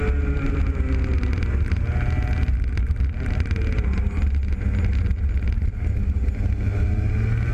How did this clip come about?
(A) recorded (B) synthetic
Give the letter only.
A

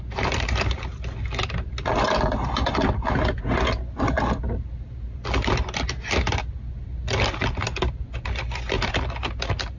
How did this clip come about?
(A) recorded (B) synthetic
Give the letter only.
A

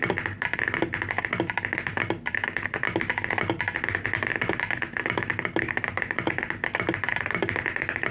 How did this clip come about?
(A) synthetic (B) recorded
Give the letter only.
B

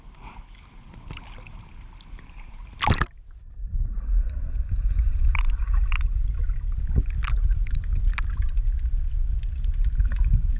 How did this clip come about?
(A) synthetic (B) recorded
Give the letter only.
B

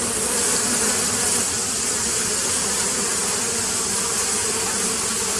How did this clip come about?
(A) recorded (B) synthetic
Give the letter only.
A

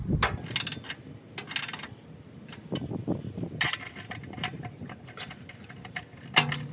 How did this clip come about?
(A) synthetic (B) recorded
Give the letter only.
B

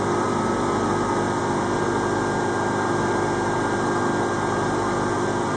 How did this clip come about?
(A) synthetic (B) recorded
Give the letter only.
B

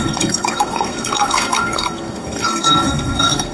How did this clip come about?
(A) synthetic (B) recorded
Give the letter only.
A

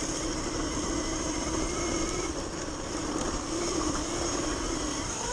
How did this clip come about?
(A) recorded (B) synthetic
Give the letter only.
B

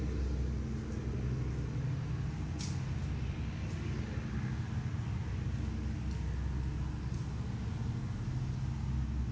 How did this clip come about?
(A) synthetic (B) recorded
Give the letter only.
B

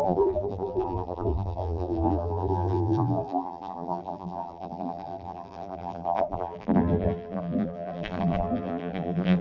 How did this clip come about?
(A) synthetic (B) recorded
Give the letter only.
A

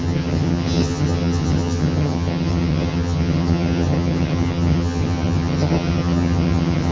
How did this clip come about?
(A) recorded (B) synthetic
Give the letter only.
B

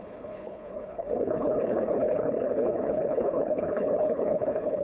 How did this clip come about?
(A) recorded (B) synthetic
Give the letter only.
B